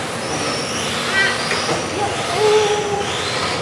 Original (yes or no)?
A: yes